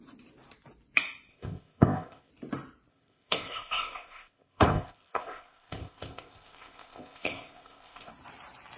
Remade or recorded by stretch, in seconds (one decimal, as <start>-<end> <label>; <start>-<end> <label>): 0.0-1.3 recorded; 1.3-2.3 remade; 2.3-2.9 recorded; 2.9-8.1 remade; 8.1-8.8 recorded